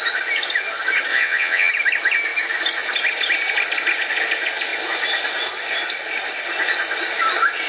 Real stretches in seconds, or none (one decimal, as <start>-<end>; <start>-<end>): 0.0-1.1; 1.7-7.7

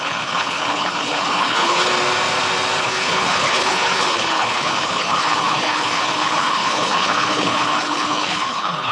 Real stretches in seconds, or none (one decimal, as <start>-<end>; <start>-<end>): 1.9-2.8

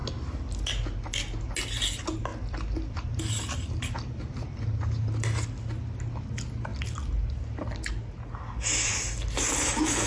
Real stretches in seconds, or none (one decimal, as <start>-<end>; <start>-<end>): 0.0-2.3; 4.3-10.1

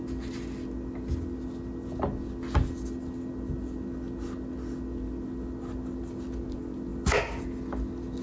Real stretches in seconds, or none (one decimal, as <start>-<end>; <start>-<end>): 0.0-8.2

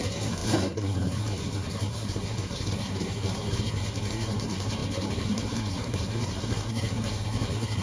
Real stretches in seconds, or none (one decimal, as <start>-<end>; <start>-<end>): none